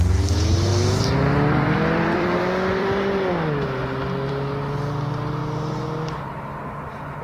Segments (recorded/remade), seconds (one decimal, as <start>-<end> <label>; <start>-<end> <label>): 0.0-0.7 recorded; 0.7-4.3 remade; 4.3-5.4 recorded; 5.4-7.2 remade